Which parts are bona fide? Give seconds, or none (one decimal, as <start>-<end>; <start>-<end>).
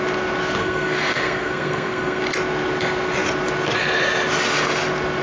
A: 0.0-0.6; 2.2-5.2